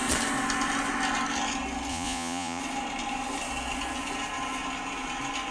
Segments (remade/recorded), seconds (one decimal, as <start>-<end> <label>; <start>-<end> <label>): 0.0-1.9 recorded; 1.9-2.6 remade; 2.6-5.5 recorded